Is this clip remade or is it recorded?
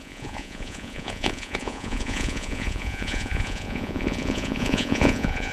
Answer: remade